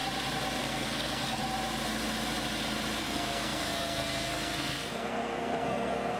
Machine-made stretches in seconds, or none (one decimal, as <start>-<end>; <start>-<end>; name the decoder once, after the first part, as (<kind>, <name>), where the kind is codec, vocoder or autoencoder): 0.6-1.4 (codec, SNAC); 3.0-6.2